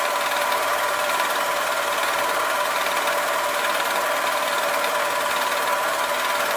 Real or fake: real